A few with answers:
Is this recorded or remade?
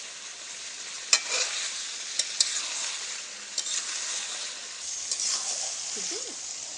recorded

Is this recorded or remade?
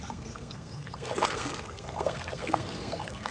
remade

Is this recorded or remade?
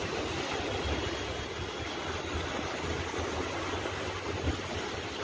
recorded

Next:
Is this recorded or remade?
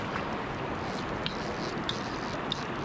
recorded